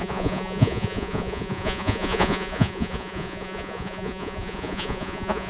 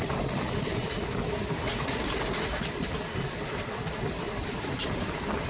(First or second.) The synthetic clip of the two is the first